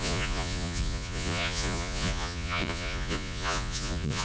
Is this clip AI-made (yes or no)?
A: yes